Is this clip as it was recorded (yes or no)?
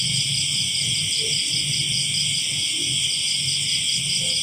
yes